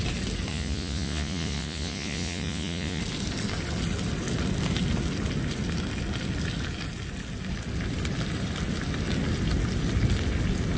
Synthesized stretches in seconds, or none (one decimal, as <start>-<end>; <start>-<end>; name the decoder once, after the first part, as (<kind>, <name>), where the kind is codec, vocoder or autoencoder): 0.5-3.0 (vocoder, Vocos)